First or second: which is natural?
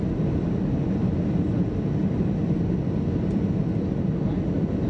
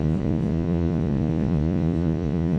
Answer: first